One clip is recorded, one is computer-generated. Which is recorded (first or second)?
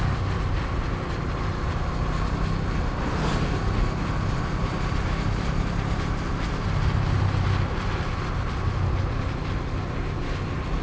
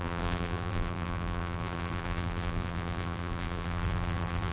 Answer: first